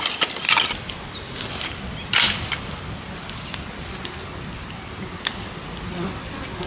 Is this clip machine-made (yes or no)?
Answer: no